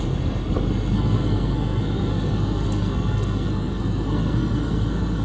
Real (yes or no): no